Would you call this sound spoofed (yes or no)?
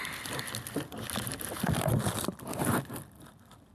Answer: no